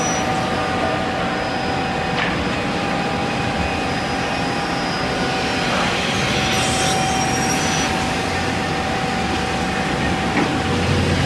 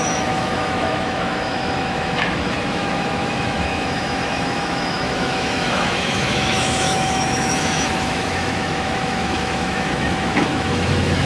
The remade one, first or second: second